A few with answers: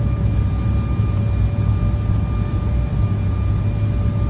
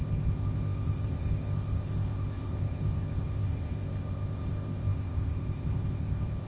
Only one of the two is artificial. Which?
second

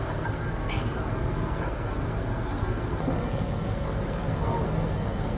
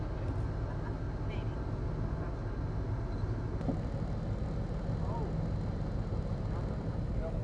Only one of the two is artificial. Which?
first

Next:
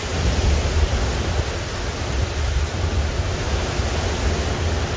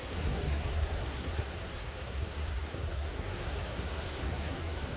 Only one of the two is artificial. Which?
second